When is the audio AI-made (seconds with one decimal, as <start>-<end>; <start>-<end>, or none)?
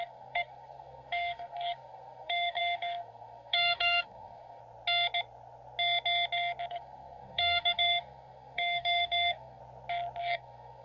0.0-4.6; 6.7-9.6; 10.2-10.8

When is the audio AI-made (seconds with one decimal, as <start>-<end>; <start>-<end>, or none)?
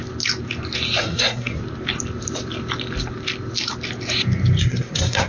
1.0-1.6; 4.6-5.3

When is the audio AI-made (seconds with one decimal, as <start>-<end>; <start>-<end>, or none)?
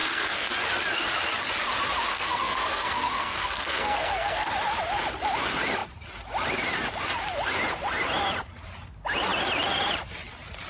0.0-0.5; 2.1-4.5